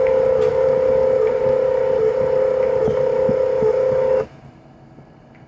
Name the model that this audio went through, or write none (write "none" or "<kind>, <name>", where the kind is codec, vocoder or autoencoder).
none